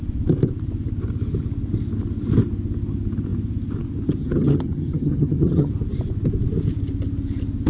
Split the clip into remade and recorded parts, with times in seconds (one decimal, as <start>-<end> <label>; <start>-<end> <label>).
0.0-4.2 recorded; 4.2-5.7 remade; 5.7-7.7 recorded

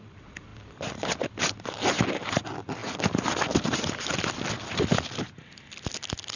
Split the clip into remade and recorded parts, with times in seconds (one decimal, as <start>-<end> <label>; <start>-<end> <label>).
0.0-6.4 recorded